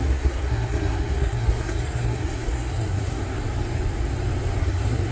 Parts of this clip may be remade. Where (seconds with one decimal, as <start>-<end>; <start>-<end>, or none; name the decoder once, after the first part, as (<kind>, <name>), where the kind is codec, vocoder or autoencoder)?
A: 0.0-3.2 (codec, SNAC); 4.6-5.1